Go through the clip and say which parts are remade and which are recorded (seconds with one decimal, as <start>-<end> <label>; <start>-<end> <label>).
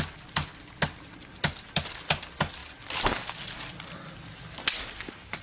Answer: 0.0-5.4 recorded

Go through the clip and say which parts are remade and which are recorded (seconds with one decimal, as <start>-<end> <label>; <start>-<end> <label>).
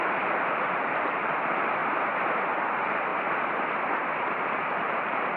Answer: 0.0-1.8 remade; 1.8-2.5 recorded; 2.5-3.1 remade; 3.1-4.3 recorded; 4.3-5.4 remade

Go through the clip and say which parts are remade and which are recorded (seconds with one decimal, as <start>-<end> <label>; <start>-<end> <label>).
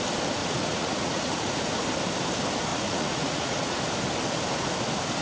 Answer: 0.0-0.4 recorded; 0.4-1.7 remade; 1.7-2.7 recorded; 2.7-3.8 remade; 3.8-5.2 recorded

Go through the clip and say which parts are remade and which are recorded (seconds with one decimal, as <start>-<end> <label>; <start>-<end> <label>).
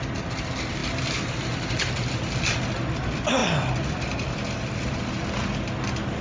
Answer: 0.0-6.2 recorded